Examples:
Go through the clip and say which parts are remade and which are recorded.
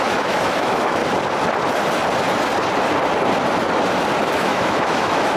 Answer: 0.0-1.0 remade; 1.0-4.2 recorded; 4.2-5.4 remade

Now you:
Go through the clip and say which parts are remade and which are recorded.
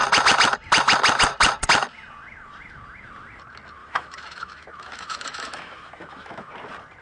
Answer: 0.0-3.8 recorded; 3.8-6.5 remade; 6.5-7.0 recorded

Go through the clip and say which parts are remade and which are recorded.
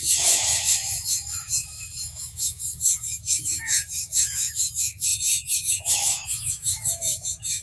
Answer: 0.0-7.6 remade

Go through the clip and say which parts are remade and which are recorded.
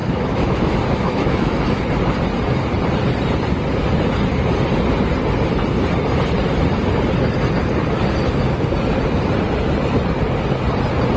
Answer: 0.0-1.8 remade; 1.8-11.2 recorded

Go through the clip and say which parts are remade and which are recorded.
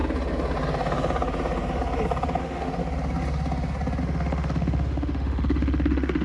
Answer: 0.0-2.4 recorded; 2.4-2.8 remade; 2.8-4.0 recorded; 4.0-6.2 remade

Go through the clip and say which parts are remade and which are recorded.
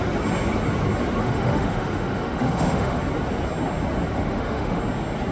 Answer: 0.0-1.2 recorded; 1.2-3.0 remade; 3.0-4.1 recorded; 4.1-4.8 remade; 4.8-5.3 recorded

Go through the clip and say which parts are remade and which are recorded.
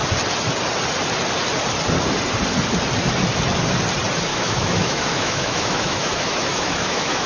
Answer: 0.0-4.3 recorded; 4.3-7.3 remade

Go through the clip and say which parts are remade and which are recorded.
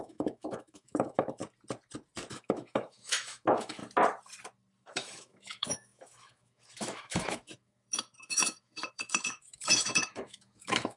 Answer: 0.0-1.4 remade; 1.4-2.3 recorded; 2.3-3.8 remade; 3.8-4.8 recorded; 4.8-11.0 remade